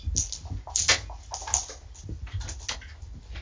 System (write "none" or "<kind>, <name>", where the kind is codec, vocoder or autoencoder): none